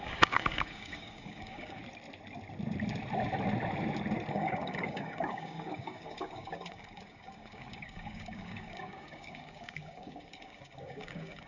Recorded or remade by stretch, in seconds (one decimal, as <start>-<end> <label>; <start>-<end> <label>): 0.0-1.8 remade; 1.8-4.3 recorded; 4.3-11.5 remade